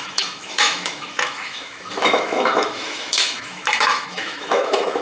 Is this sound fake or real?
fake